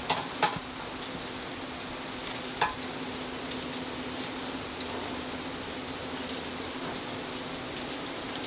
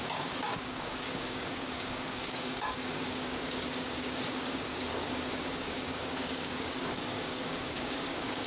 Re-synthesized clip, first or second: second